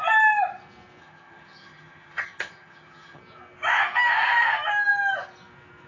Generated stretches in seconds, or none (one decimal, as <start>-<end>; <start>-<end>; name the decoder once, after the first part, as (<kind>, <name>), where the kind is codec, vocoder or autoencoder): 1.0-3.2 (vocoder, HiFi-GAN)